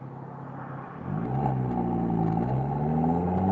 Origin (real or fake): real